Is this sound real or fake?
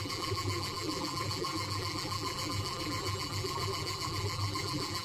fake